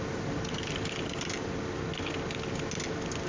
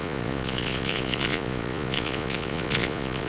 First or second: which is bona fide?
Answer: first